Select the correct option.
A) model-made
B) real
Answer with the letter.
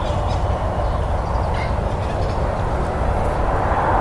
B